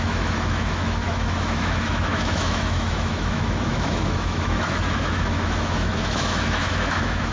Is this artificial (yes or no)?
yes